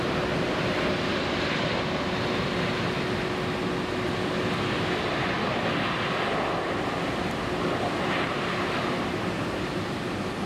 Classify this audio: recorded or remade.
recorded